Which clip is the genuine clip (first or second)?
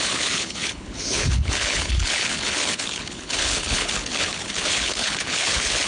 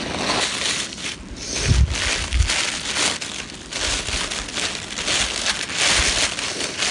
second